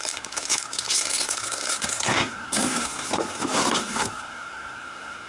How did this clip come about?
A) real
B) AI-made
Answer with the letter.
B